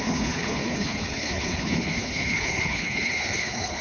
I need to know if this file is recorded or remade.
remade